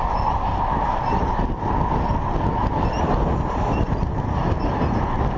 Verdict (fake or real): real